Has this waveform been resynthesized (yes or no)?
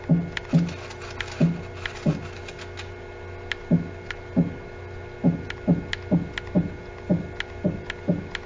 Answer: no